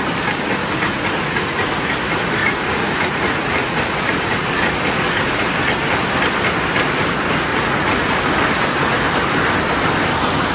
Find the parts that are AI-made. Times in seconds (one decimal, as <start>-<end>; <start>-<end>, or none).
0.5-1.9; 2.4-5.5; 7.5-8.2